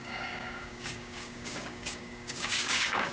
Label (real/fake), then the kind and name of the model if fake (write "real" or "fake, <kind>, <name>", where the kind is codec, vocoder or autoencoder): fake, codec, DAC